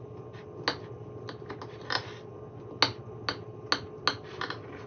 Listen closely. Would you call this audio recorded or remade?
recorded